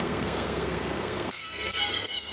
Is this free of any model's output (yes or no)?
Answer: no